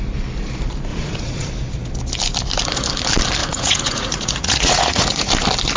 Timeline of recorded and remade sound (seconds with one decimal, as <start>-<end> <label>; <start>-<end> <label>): 0.0-0.9 recorded; 0.9-1.5 remade; 1.5-3.4 recorded; 3.4-5.3 remade; 5.3-5.8 recorded